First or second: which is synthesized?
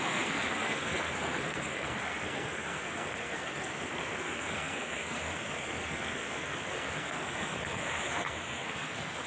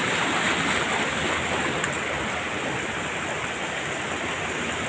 first